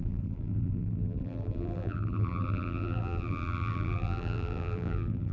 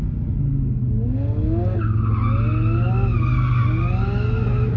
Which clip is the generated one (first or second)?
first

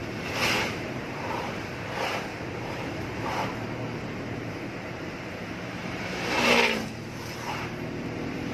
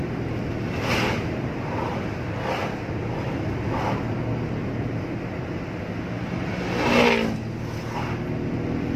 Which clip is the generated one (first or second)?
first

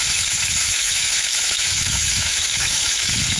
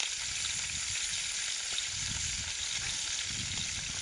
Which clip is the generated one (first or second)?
first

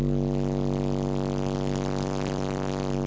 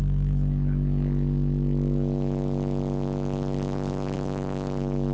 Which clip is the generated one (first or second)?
second